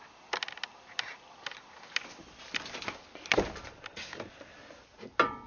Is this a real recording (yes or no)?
yes